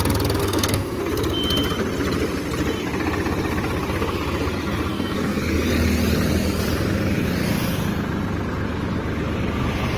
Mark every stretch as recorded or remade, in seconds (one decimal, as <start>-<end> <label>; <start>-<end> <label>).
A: 0.0-0.4 recorded; 0.4-1.0 remade; 1.0-4.9 recorded; 4.9-5.4 remade; 5.4-10.0 recorded